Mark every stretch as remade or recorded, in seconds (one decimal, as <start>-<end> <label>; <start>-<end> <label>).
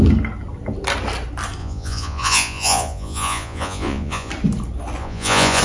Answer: 0.0-1.6 recorded; 1.6-4.3 remade; 4.3-5.0 recorded; 5.0-5.6 remade